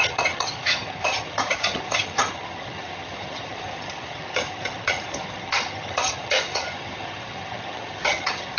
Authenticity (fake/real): fake